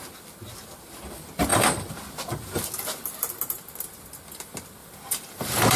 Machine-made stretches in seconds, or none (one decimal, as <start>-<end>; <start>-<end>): 4.8-5.8